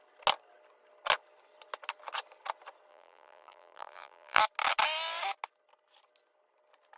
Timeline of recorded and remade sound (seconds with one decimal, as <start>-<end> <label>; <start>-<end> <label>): 0.0-2.9 recorded; 2.9-4.4 remade; 4.4-7.0 recorded

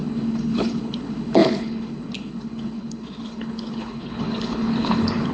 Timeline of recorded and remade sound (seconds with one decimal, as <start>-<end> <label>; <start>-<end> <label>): 0.0-5.3 remade

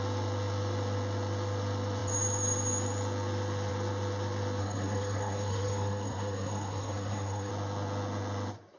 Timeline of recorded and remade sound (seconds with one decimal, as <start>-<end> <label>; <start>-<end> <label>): 0.0-4.6 recorded; 4.6-7.5 remade; 7.5-8.8 recorded